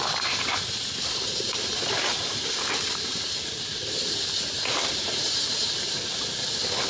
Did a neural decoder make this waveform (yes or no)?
yes